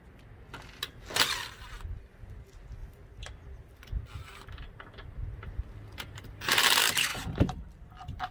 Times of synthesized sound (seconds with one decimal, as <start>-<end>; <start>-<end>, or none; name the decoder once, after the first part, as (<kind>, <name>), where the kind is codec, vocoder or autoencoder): 2.8-6.6 (vocoder, BigVGAN v2); 7.1-8.3